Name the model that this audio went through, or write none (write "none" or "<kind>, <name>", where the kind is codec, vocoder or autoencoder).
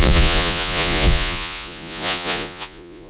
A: vocoder, Vocos